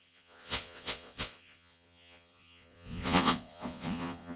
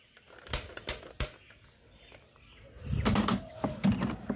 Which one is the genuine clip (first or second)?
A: second